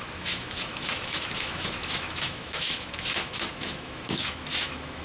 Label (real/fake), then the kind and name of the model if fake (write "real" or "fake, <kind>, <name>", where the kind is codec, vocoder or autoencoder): fake, autoencoder, DAC-VAE